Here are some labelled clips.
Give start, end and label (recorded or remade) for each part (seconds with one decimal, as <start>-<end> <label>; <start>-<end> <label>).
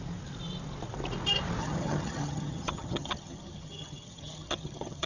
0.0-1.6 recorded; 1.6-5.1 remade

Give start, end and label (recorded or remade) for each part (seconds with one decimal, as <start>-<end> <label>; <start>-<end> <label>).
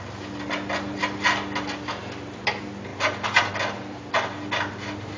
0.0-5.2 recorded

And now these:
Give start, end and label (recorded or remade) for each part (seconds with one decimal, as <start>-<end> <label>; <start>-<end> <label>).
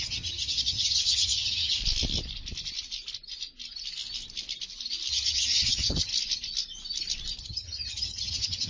0.0-1.8 remade; 1.8-5.1 recorded; 5.1-6.1 remade; 6.1-7.4 recorded; 7.4-8.7 remade